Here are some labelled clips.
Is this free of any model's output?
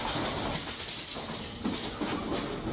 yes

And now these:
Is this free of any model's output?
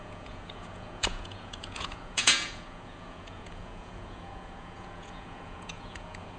no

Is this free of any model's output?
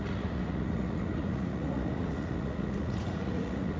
no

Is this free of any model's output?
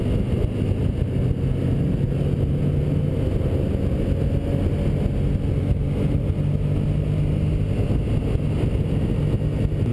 yes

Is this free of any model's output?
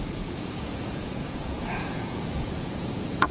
no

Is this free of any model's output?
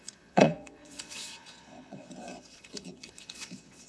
no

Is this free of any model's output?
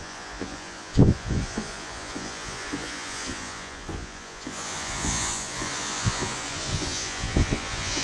no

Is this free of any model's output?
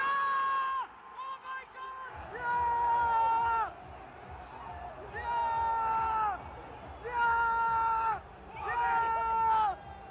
yes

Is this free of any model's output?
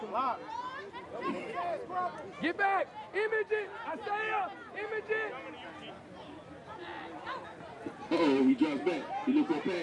yes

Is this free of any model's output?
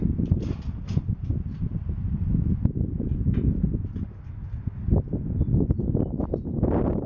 yes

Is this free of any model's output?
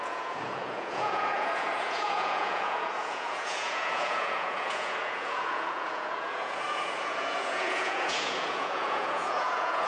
no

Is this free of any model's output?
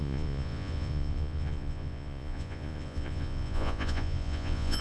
no